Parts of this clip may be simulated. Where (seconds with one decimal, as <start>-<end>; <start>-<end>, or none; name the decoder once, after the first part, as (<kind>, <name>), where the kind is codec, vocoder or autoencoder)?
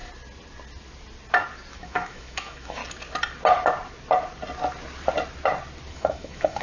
1.7-2.8 (autoencoder, DAC-VAE); 5.9-6.6